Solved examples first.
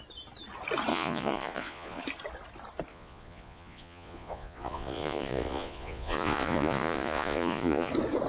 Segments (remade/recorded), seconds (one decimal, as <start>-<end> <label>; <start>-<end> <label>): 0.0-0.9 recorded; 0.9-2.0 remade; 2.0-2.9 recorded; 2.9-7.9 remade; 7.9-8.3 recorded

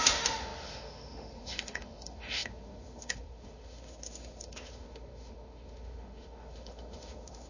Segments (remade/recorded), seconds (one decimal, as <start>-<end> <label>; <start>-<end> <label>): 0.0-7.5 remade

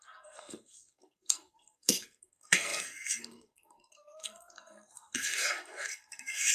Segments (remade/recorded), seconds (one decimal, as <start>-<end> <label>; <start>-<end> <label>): 0.0-6.5 remade